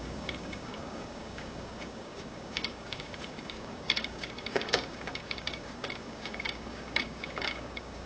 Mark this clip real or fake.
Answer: fake